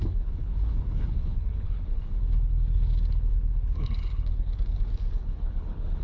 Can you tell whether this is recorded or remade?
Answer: remade